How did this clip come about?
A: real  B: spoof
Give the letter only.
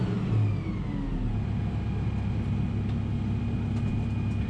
A